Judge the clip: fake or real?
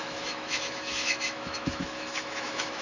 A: fake